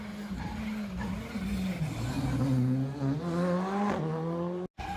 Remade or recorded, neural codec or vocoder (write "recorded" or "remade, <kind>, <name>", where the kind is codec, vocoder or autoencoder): recorded